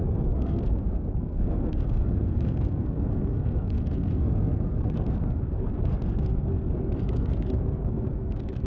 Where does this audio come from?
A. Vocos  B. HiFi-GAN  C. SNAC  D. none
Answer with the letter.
C